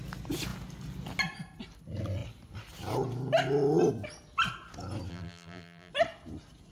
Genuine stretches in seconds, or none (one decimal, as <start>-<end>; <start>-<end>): 0.0-5.1; 5.9-6.7